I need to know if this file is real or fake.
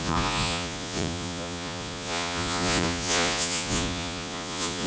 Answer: fake